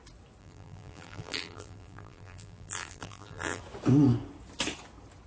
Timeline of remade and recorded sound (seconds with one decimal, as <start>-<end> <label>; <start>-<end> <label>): 0.0-0.4 recorded; 0.4-3.6 remade; 3.6-5.3 recorded